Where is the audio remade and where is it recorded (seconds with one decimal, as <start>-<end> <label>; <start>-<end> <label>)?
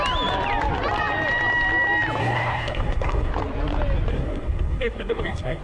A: 0.0-2.2 recorded; 2.2-3.3 remade; 3.3-4.1 recorded; 4.1-5.6 remade